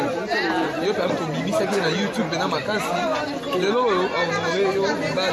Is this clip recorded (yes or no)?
yes